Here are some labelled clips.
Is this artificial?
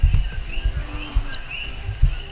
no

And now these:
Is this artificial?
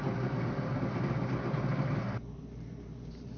no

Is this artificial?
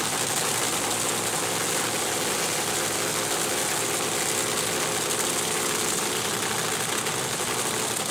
no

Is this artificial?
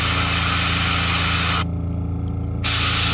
no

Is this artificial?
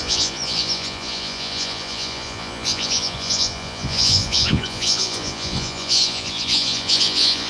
yes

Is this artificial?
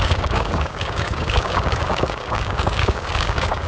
yes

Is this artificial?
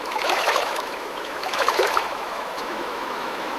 yes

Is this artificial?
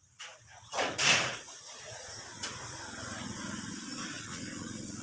yes